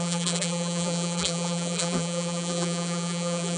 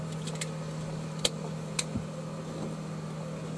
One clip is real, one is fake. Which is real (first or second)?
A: second